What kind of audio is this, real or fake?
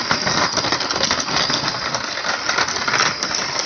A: real